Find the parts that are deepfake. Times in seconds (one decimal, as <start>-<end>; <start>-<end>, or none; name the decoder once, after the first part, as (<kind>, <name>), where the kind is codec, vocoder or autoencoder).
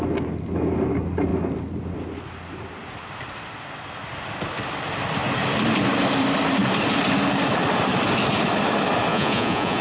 9.1-9.8 (vocoder, Vocos)